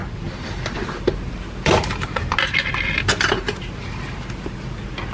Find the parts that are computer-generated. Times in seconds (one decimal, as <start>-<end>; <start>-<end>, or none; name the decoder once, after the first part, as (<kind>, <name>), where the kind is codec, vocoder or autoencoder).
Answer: none